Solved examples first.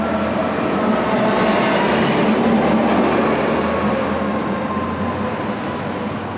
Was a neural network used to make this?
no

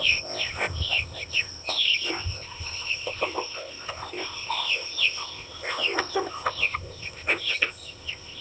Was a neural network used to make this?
yes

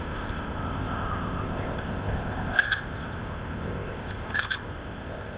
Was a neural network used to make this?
yes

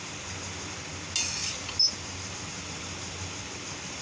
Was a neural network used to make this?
no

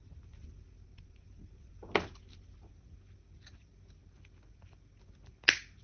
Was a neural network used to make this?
no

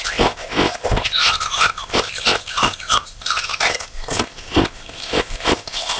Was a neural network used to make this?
yes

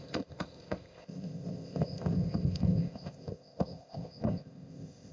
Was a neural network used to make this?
yes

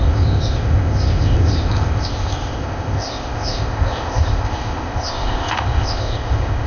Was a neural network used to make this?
yes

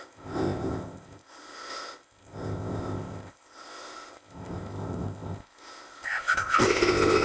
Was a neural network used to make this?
yes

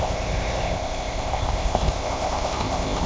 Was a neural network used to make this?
yes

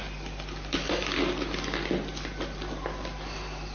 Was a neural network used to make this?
no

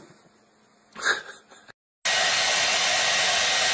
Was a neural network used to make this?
no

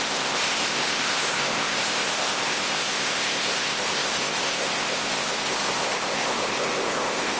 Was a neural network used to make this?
yes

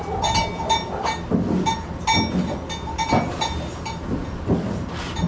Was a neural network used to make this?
no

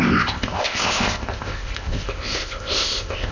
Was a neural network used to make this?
yes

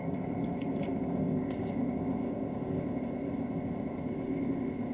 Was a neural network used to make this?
yes